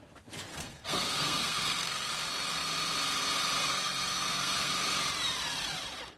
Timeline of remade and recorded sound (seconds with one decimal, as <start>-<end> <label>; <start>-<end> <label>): 0.0-0.5 recorded; 0.5-2.1 remade; 2.1-3.6 recorded; 3.6-4.7 remade; 4.7-6.2 recorded